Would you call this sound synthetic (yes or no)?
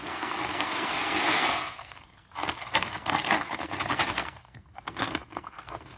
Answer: yes